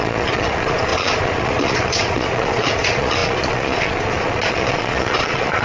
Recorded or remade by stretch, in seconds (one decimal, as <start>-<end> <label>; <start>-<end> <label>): 0.0-5.6 remade